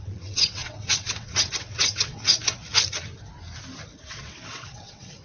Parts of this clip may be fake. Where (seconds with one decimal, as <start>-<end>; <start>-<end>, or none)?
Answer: 0.0-2.3; 4.0-5.2